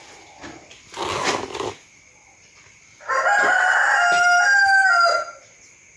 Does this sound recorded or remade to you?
recorded